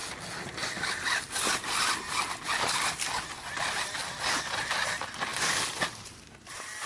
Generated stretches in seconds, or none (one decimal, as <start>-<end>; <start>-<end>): none